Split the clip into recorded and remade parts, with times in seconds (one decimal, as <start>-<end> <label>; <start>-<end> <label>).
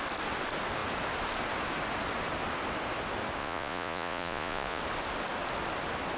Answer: 0.0-3.4 recorded; 3.4-4.8 remade; 4.8-6.2 recorded